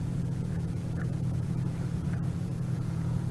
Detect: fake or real fake